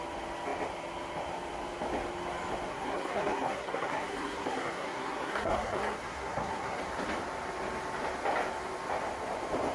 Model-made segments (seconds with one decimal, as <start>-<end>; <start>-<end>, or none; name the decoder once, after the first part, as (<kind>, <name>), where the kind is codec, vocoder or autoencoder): 2.7-6.8 (codec, SNAC)